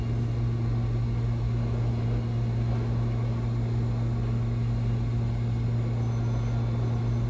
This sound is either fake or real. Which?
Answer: real